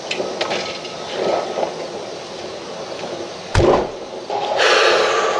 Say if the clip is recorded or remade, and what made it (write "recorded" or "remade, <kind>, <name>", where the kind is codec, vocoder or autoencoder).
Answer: recorded